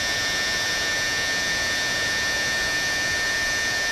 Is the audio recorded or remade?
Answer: remade